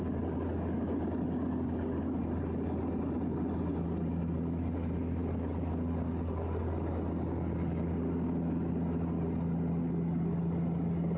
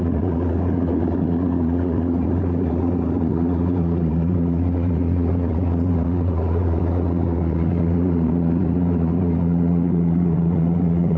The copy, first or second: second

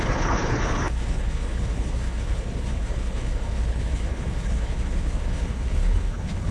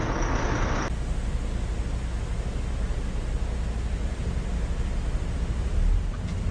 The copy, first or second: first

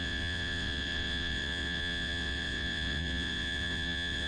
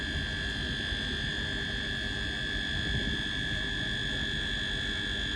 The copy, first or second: first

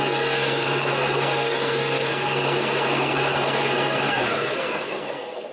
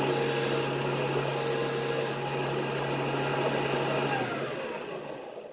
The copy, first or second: first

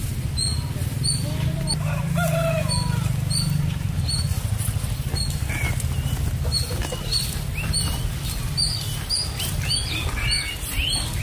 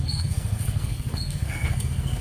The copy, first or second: second